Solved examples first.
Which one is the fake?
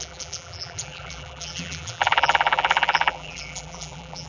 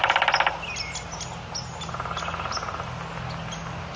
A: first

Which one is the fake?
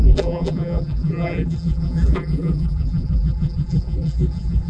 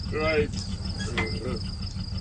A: first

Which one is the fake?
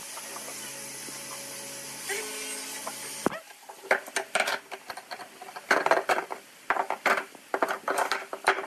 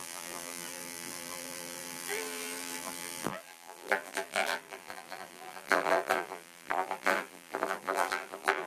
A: second